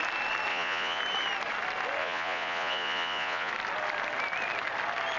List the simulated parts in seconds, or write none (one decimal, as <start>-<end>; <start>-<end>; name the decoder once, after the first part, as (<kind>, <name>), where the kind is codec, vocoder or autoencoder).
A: 0.5-1.0 (vocoder, Vocos); 2.0-3.5